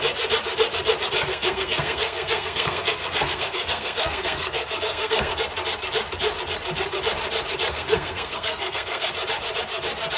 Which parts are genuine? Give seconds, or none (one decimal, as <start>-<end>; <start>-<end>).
0.0-1.3; 5.3-7.7; 9.1-10.2